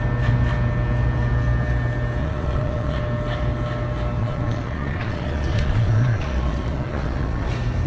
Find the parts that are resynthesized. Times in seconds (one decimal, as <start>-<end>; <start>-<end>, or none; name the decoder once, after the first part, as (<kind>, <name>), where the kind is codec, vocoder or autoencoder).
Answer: 2.2-3.0 (vocoder, Vocos); 4.2-7.5